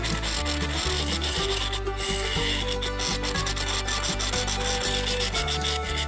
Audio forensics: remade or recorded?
recorded